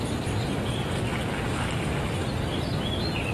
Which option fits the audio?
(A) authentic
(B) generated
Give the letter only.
A